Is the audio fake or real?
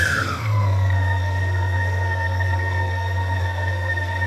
fake